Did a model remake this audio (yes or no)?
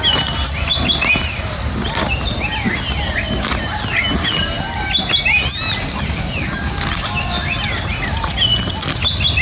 no